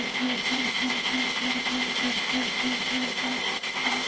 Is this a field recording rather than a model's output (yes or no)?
no